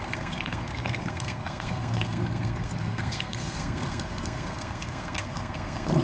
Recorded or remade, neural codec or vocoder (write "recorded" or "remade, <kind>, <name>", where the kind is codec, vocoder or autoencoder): remade, codec, SNAC